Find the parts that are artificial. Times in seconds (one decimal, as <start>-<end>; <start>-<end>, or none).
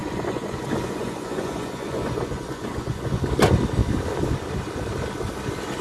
0.0-3.2